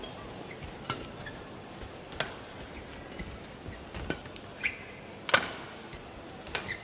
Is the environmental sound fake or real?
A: real